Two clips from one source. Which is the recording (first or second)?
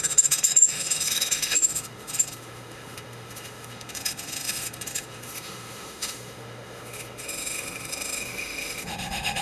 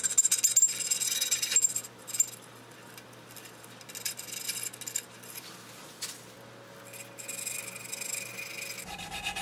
second